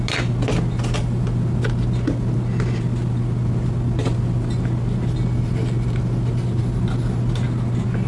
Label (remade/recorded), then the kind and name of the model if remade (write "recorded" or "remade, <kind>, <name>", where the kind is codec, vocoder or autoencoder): recorded